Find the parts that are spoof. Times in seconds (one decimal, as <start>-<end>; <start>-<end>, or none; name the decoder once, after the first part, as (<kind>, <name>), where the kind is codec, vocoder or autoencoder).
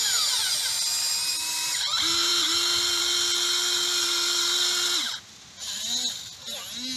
none